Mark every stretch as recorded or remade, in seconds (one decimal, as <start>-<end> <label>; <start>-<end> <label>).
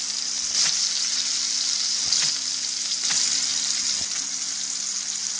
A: 0.0-5.4 recorded